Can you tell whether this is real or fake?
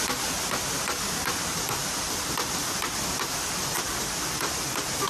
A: real